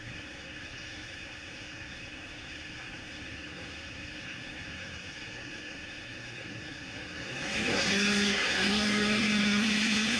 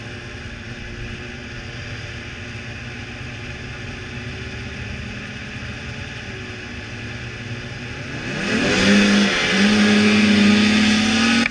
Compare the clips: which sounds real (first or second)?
second